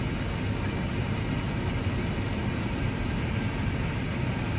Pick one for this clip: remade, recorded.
recorded